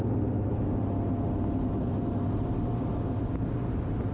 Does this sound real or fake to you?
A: real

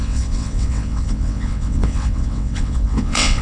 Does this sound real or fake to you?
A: fake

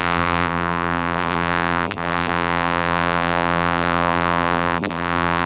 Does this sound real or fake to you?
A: fake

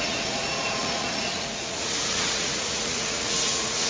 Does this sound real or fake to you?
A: fake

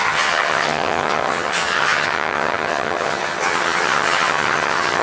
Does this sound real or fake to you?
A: fake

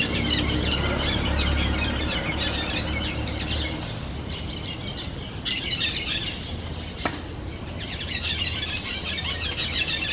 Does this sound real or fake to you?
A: real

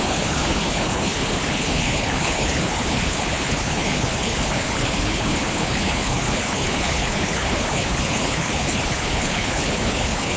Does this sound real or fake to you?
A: fake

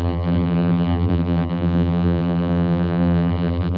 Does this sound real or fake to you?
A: fake